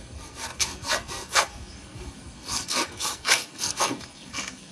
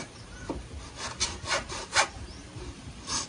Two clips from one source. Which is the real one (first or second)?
second